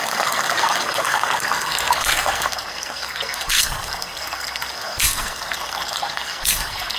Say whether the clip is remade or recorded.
remade